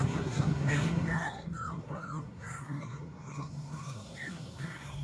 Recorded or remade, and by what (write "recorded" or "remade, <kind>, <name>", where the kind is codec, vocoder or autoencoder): remade, codec, SNAC